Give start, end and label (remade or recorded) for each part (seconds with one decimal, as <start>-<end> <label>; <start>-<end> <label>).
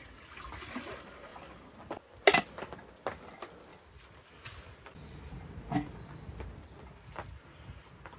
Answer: 0.0-8.2 recorded